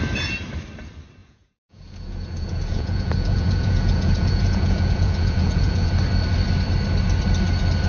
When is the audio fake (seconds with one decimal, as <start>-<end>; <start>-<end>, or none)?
1.2-5.9